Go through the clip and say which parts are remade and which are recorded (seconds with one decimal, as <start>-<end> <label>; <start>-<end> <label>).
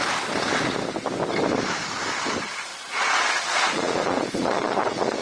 0.0-2.7 recorded; 2.7-5.2 remade